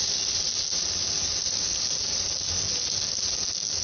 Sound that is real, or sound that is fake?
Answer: real